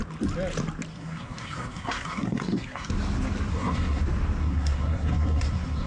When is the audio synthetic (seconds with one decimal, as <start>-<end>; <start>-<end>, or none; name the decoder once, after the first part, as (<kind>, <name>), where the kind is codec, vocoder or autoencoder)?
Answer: 0.9-2.9 (codec, SNAC); 3.5-4.0; 4.4-5.9